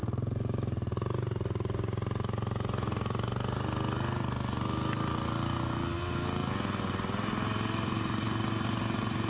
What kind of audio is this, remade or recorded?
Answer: recorded